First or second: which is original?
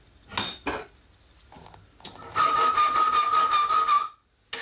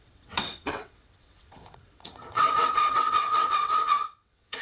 first